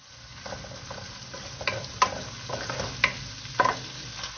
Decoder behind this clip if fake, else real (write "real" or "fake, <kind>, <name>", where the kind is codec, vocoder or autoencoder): real